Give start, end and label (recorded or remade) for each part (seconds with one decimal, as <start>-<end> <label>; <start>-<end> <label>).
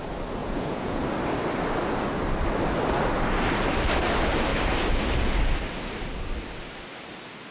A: 0.0-0.4 recorded; 0.4-1.0 remade; 1.0-7.5 recorded